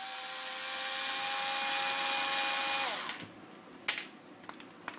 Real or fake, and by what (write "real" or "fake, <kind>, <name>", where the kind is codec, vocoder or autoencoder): real